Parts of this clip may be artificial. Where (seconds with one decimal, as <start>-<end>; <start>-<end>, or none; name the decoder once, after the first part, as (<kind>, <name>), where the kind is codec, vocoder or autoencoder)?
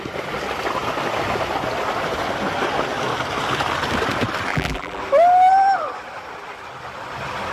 4.5-5.0 (vocoder, BigVGAN v2)